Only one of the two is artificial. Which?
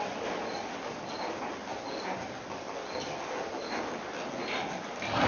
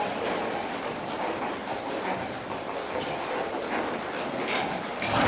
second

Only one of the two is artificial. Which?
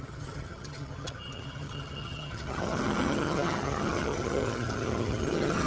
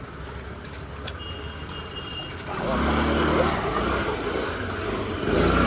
first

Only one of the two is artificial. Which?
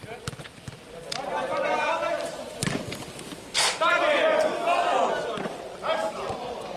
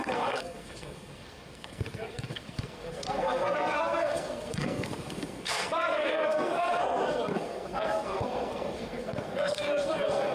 second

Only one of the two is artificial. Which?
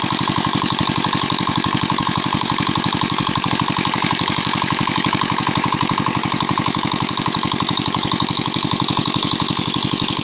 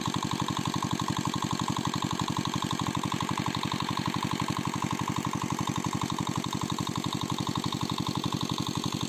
first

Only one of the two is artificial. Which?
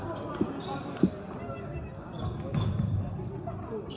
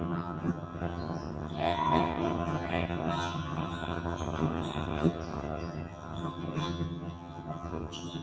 second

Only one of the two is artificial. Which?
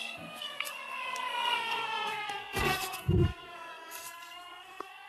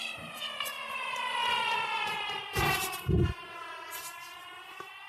first